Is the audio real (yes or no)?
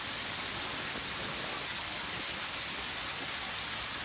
yes